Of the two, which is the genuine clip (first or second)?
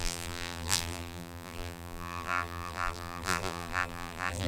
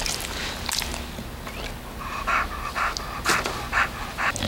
second